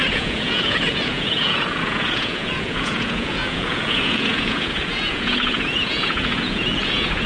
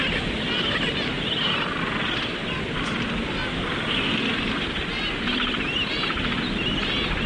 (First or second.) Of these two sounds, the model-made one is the first